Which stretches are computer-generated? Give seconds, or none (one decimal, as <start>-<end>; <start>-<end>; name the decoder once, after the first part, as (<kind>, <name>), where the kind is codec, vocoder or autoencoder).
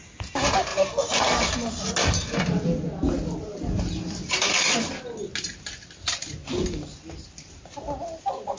none